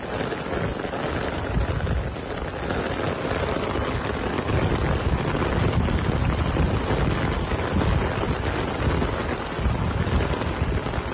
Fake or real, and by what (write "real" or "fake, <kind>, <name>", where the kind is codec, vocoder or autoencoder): real